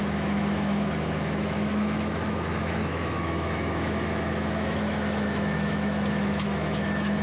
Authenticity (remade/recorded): remade